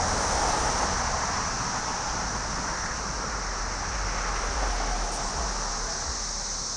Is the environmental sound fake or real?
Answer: real